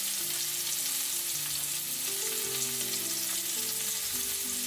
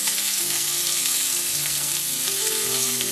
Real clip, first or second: first